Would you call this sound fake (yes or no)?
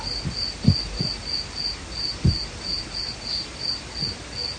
no